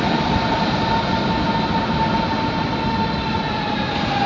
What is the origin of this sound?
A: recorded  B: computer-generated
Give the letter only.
A